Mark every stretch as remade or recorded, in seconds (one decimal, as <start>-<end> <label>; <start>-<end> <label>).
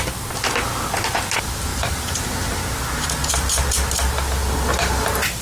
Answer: 0.0-1.7 recorded; 1.7-2.6 remade; 2.6-5.4 recorded